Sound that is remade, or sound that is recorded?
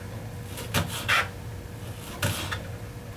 recorded